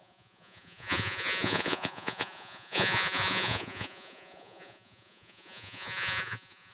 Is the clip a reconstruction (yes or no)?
yes